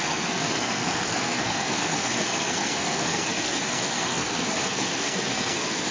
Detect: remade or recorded remade